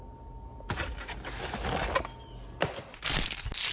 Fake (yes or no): no